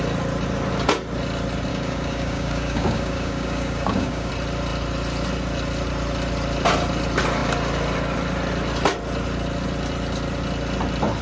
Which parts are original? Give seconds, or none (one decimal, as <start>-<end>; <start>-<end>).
0.0-1.7; 4.3-11.2